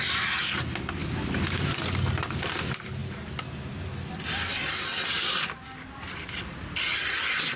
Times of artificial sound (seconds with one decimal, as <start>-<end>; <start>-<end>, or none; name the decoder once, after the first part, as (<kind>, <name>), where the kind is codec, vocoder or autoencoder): none